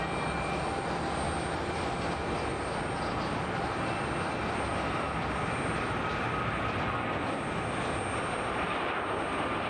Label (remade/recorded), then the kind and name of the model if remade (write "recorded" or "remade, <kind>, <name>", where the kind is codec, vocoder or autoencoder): recorded